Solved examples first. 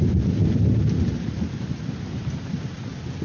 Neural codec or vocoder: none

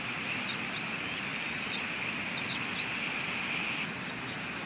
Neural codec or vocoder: none